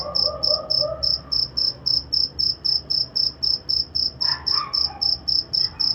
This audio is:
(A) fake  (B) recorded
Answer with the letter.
B